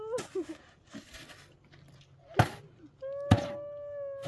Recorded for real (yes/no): yes